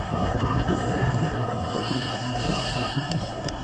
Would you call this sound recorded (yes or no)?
no